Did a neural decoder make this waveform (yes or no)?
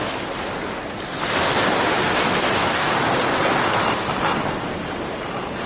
no